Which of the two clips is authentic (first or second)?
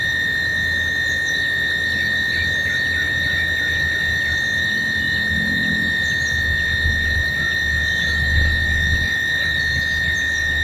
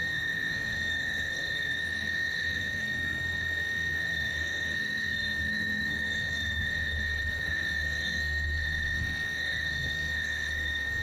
first